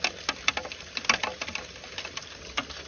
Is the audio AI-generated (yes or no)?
no